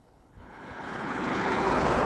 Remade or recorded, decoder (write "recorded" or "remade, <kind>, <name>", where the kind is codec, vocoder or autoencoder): remade, codec, HILCodec